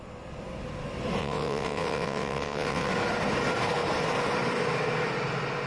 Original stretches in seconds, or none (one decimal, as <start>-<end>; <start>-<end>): 0.0-1.2; 2.9-5.7